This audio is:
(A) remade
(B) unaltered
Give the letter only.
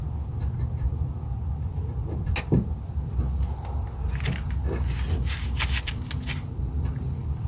B